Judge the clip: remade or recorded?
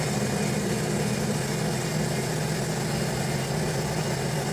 recorded